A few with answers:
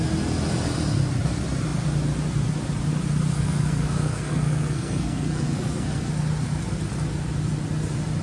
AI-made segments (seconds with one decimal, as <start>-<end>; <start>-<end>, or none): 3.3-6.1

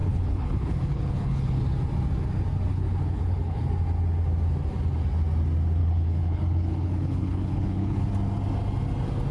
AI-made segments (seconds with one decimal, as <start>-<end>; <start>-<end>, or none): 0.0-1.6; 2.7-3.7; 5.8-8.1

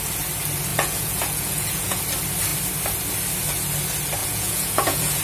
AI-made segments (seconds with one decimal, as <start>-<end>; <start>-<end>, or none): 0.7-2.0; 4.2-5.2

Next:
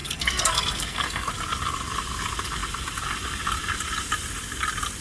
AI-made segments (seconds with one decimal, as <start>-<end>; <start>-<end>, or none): 0.0-1.3

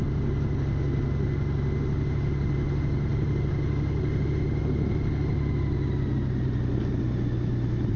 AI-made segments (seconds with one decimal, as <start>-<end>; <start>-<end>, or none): none

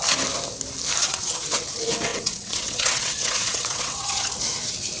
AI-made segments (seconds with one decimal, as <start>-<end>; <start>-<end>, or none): 1.0-1.6; 2.1-4.3